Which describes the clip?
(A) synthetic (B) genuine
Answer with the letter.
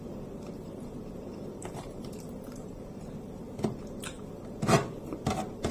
A